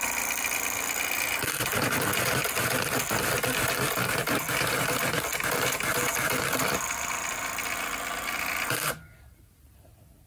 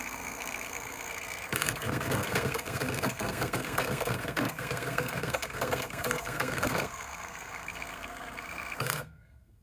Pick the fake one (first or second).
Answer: second